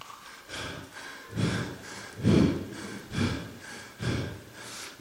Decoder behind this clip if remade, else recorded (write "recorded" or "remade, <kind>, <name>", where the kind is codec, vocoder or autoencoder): recorded